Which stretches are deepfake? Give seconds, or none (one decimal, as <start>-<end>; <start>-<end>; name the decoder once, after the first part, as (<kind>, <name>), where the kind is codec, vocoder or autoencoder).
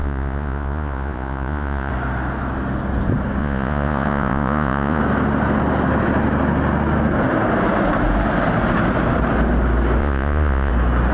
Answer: 0.0-1.9 (vocoder, Vocos); 3.4-5.0; 10.0-10.7